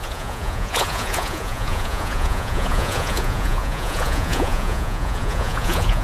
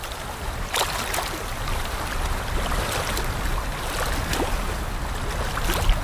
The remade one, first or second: first